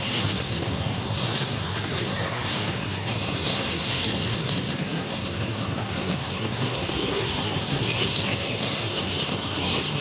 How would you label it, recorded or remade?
remade